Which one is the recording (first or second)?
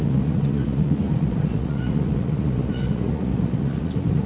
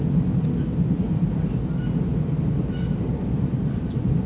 second